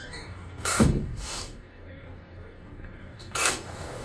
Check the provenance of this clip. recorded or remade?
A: remade